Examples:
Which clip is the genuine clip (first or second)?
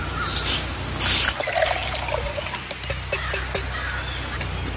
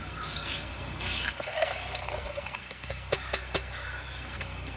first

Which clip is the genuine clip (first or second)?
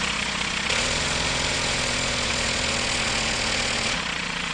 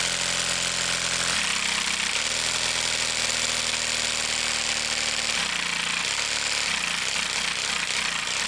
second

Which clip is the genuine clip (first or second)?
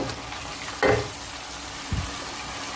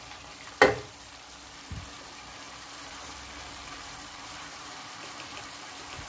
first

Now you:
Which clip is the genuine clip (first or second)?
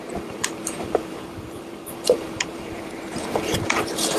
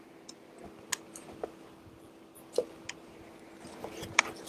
second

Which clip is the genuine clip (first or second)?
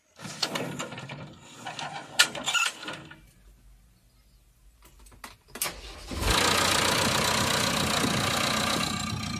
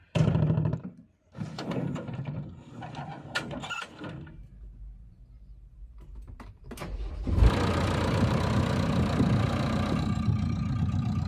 first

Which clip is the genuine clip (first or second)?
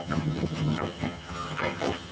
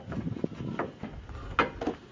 second